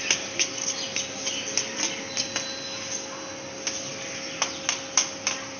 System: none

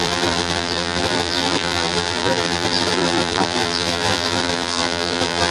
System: vocoder, BigVGAN v2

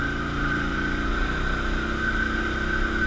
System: none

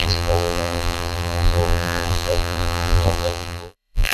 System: vocoder, BigVGAN v2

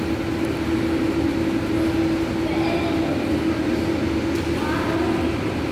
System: none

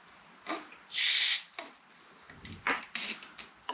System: vocoder, BigVGAN v2